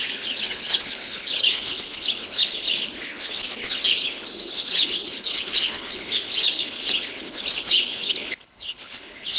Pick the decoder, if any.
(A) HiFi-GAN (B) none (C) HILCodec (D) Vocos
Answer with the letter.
C